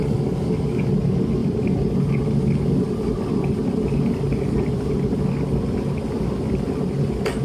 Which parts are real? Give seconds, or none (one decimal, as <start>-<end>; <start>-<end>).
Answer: 0.9-7.4